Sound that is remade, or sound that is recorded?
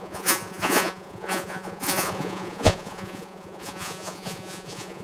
remade